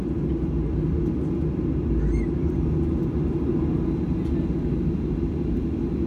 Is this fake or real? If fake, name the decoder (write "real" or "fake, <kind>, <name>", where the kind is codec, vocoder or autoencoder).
real